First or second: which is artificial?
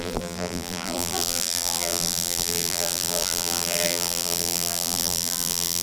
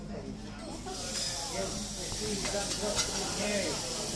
first